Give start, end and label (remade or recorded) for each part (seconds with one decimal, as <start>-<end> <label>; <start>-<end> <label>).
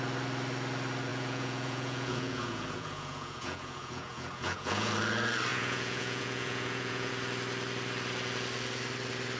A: 0.0-1.1 recorded; 1.1-4.9 remade; 4.9-5.5 recorded; 5.5-7.1 remade; 7.1-9.4 recorded